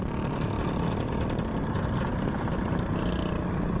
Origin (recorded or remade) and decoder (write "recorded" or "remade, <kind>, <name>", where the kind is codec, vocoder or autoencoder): recorded